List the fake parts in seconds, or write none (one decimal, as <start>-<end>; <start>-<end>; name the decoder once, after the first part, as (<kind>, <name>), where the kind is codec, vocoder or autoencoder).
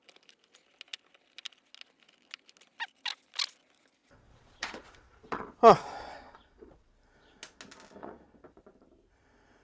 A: 4.0-6.9 (vocoder, Vocos); 8.0-8.6